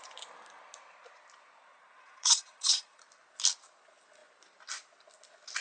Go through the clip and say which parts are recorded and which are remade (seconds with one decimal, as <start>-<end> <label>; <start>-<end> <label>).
0.0-1.7 recorded; 1.7-3.1 remade; 3.1-5.6 recorded